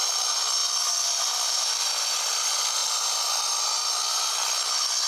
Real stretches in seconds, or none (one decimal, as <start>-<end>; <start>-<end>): 0.0-5.1